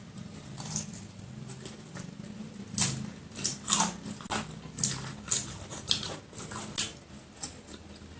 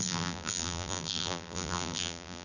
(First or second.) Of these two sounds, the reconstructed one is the second